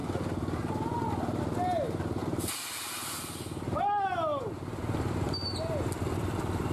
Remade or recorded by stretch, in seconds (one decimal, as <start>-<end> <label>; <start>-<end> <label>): 0.0-6.7 recorded